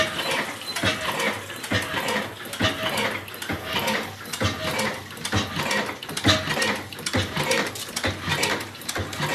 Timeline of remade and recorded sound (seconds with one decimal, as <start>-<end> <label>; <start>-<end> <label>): 0.0-8.3 recorded; 8.3-8.9 remade; 8.9-9.3 recorded